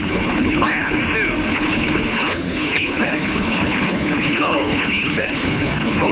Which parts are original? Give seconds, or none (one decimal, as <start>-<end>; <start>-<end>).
1.0-1.5